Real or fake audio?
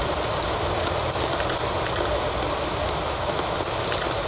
real